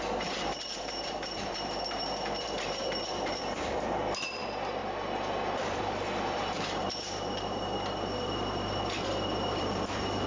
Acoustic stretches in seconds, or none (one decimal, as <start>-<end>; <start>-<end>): 4.8-5.8